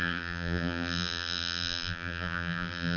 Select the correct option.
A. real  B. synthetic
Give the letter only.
B